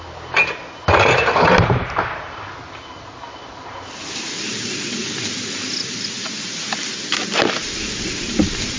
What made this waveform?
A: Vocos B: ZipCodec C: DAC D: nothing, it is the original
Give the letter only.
D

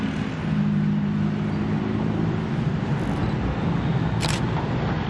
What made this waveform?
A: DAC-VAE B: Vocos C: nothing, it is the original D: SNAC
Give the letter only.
C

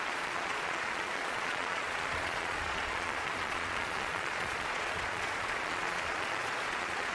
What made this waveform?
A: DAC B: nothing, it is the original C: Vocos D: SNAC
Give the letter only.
C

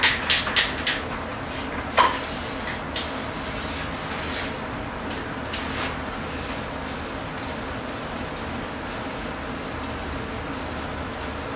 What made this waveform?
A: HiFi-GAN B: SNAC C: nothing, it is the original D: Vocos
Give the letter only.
C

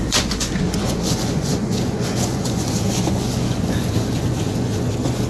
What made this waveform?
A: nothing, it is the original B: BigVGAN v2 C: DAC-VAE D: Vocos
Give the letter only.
D